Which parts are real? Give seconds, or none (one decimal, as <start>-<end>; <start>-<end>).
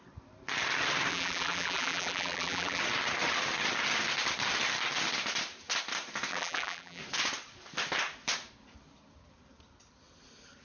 0.0-1.1; 2.8-6.3; 7.0-10.6